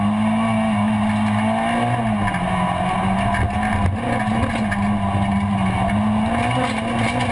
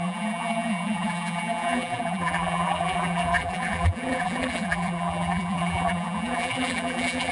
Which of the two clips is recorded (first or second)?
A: first